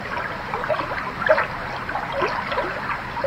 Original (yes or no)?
yes